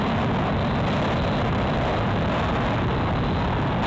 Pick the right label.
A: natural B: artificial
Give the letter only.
A